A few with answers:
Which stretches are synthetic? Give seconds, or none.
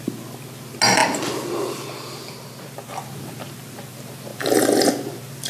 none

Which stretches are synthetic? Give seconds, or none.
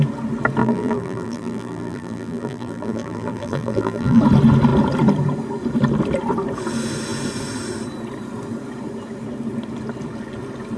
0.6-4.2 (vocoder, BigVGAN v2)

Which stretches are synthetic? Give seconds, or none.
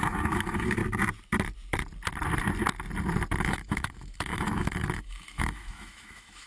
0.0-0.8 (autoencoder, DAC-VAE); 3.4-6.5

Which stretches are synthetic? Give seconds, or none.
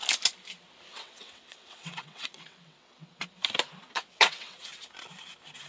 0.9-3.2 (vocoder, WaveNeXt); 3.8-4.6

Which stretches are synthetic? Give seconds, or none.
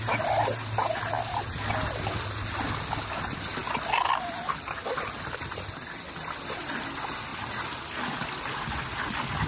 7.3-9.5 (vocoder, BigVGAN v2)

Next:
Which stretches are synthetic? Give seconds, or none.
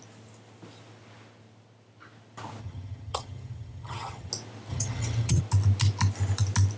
2.6-4.3 (vocoder, HiFi-GAN); 4.7-5.4